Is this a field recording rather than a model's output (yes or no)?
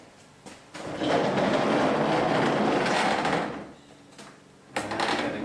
yes